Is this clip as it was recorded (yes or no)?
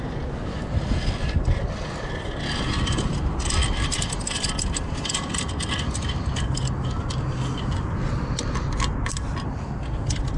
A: yes